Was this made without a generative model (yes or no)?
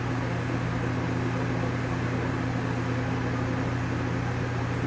yes